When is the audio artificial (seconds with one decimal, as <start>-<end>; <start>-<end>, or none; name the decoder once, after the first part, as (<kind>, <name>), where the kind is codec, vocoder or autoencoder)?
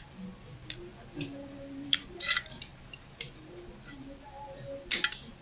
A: none